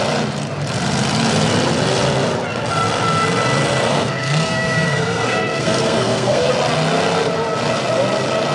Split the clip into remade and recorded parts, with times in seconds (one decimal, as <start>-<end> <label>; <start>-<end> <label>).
0.0-3.9 recorded; 3.9-6.5 remade; 6.5-8.5 recorded